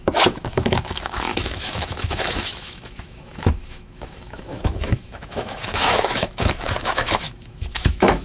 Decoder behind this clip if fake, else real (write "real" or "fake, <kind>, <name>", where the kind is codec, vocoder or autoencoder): fake, autoencoder, DAC-VAE